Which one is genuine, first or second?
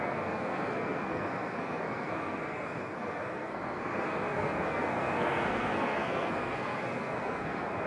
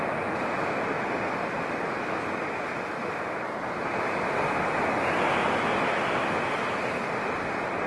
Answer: second